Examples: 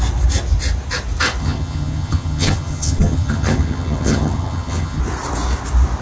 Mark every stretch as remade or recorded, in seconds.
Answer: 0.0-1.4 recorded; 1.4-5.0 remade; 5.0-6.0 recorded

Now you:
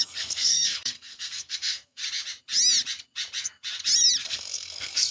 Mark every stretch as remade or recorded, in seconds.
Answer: 0.0-2.0 remade; 2.0-4.2 recorded; 4.2-5.1 remade

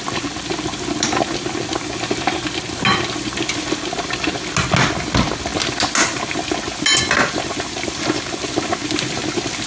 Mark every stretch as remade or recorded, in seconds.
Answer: 0.0-9.7 recorded